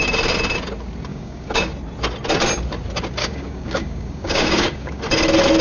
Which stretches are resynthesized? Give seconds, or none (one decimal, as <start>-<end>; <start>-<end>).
1.1-1.7; 3.2-5.0

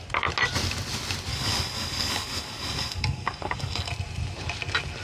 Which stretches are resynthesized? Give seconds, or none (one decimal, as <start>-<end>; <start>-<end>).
1.3-3.9

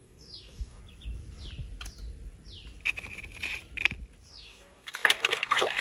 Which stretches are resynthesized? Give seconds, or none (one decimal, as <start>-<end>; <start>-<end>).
0.0-0.8; 4.3-5.8